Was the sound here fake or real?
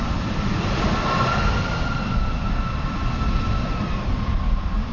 real